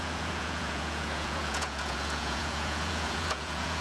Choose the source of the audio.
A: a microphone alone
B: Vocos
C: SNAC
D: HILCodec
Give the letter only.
B